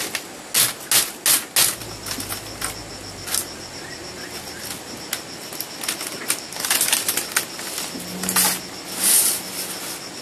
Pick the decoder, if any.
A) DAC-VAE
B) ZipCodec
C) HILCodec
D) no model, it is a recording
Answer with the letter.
D